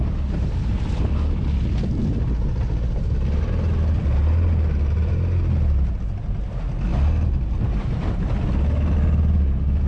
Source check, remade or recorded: recorded